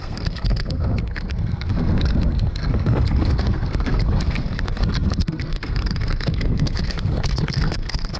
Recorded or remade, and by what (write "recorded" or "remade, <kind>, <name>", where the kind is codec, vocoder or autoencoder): remade, codec, SNAC